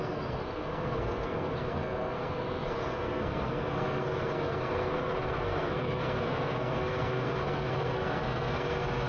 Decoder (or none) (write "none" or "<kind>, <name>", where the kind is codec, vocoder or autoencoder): codec, SNAC